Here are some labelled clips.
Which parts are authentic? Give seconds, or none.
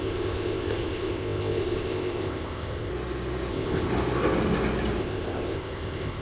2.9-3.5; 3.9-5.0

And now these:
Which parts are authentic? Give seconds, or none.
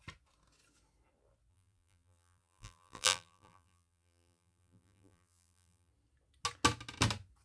0.0-1.5; 5.9-7.4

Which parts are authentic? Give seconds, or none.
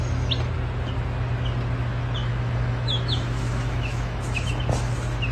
0.0-2.2; 4.6-5.3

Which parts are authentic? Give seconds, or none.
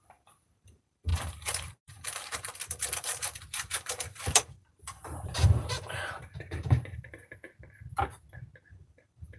7.2-8.7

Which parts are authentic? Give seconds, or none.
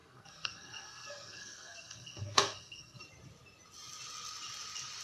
3.0-5.0